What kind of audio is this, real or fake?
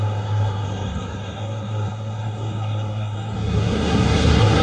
fake